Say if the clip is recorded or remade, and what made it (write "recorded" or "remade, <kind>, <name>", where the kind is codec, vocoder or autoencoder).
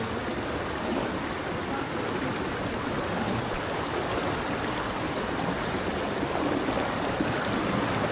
recorded